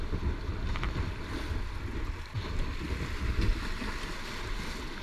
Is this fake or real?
fake